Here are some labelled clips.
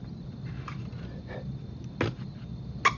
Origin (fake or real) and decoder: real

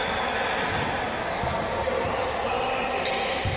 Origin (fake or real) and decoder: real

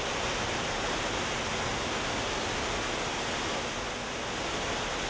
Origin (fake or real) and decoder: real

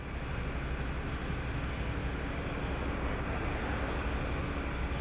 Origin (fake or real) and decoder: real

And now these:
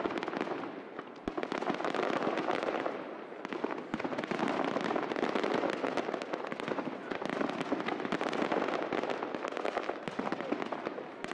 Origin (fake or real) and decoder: real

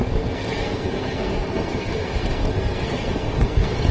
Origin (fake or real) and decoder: fake, codec, SNAC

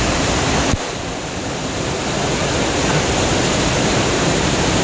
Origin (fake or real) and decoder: real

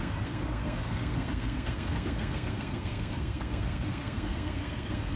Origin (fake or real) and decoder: fake, codec, SNAC